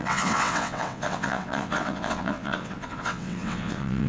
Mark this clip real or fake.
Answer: fake